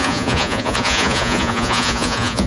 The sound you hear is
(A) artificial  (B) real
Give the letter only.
A